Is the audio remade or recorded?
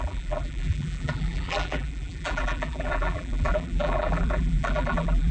remade